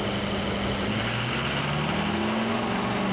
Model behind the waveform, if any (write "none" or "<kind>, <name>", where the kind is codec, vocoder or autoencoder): none